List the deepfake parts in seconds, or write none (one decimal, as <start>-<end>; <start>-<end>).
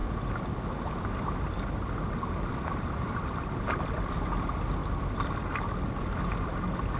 none